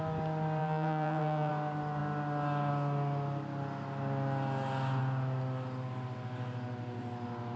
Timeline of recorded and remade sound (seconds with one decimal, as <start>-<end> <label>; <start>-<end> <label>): 0.0-0.6 recorded; 0.6-1.5 remade; 1.5-7.6 recorded